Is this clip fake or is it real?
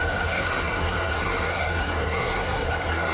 fake